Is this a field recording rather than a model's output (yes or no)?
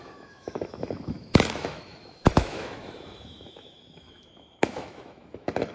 no